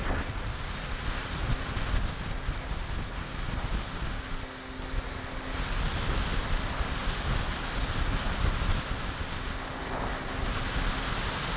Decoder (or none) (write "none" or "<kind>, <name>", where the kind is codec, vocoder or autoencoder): none